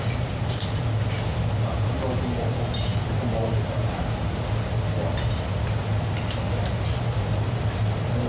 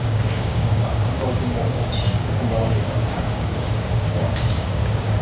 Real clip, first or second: first